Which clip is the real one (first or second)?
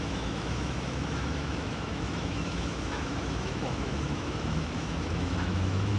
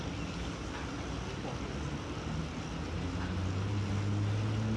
second